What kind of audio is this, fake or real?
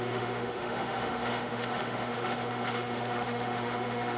fake